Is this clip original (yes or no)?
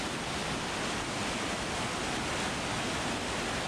yes